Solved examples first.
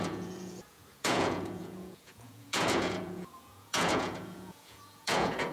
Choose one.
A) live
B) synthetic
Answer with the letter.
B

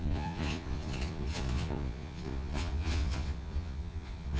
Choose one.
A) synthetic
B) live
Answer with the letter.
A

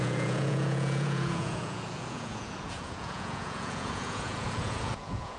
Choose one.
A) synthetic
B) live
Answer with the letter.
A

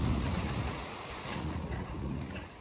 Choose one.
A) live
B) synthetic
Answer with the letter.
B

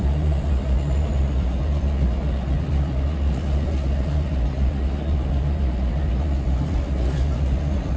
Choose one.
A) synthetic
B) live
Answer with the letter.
A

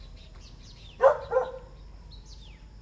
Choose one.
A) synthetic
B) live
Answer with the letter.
B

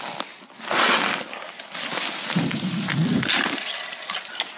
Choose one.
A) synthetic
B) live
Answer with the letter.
B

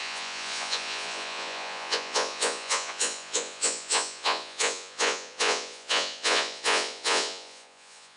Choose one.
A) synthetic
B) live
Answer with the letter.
A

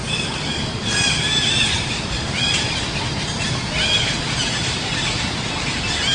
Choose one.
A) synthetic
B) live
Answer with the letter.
B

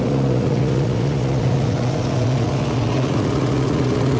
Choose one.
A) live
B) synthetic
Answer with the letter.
B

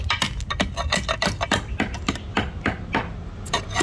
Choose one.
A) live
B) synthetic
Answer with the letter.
A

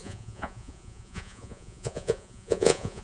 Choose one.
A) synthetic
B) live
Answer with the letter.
A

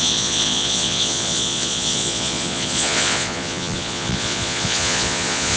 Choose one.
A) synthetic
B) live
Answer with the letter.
A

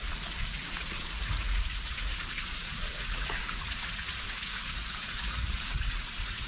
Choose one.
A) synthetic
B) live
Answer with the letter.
A